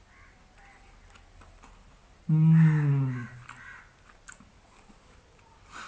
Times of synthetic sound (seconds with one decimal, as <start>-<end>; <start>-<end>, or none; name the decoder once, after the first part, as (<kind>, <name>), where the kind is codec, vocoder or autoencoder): none